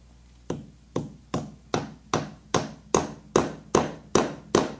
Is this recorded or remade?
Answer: recorded